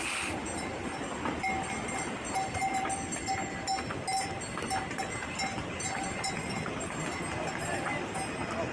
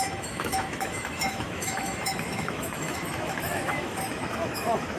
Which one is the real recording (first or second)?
first